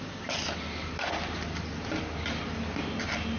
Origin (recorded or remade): recorded